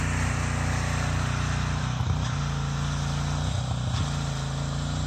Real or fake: real